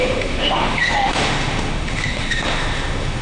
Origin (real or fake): fake